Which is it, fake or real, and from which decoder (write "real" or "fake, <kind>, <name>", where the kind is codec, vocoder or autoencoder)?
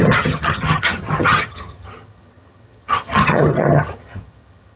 fake, vocoder, HiFi-GAN